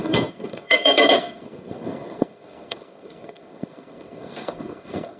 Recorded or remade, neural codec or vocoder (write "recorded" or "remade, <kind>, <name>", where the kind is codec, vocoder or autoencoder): remade, codec, SNAC